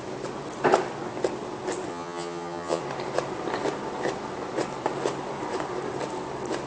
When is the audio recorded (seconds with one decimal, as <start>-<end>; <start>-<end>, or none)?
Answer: 0.0-1.9; 2.8-6.7